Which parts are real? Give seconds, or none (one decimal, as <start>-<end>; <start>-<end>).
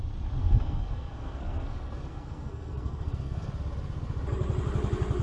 0.0-0.4; 3.5-5.2